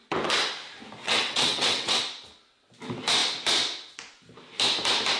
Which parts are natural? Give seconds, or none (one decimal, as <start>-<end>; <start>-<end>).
0.0-1.0; 2.0-5.2